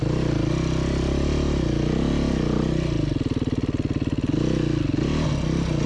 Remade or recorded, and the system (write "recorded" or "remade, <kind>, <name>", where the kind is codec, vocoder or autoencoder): recorded